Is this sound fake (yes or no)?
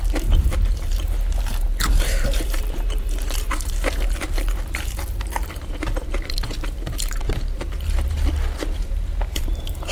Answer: yes